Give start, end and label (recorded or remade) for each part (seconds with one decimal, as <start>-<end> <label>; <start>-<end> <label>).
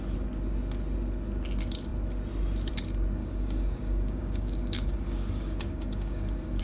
0.0-3.2 recorded; 3.2-6.6 remade